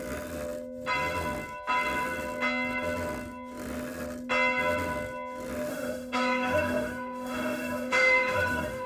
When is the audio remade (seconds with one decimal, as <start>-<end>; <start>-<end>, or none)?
5.7-8.9